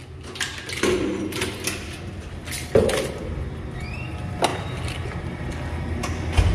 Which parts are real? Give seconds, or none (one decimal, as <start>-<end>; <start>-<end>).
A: 0.0-6.5